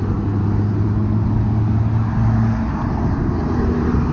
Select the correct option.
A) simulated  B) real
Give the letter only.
B